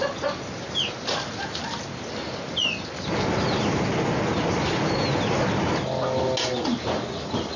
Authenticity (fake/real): real